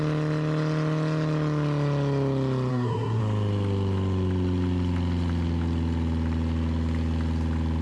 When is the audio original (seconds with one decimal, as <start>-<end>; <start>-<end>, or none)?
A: 0.0-2.7; 3.2-7.8